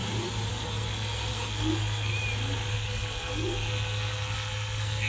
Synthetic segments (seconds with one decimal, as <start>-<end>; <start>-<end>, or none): 0.5-2.1; 2.7-5.1